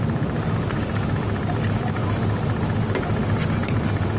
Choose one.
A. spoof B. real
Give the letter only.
B